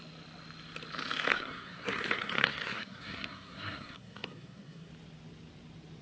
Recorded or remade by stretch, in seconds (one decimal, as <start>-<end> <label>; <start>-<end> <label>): 0.0-1.3 recorded; 1.3-4.9 remade; 4.9-6.0 recorded